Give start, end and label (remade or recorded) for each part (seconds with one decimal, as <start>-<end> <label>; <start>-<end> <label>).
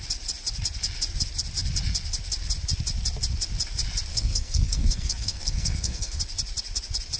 0.0-4.1 recorded; 4.1-6.2 remade; 6.2-7.2 recorded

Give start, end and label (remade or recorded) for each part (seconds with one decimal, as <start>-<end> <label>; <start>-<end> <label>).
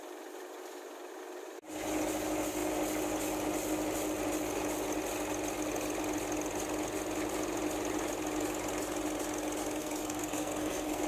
0.0-9.8 recorded; 9.8-11.1 remade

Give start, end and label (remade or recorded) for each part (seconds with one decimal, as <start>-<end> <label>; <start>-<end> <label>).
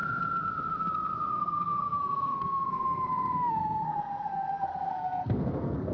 0.0-1.3 recorded; 1.3-5.9 remade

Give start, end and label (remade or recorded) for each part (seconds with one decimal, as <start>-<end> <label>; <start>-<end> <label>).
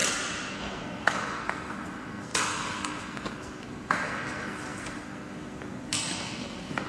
0.0-0.5 recorded; 0.5-6.9 remade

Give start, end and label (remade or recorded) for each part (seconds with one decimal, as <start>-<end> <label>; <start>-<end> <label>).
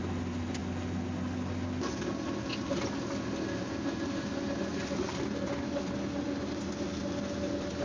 0.0-7.8 recorded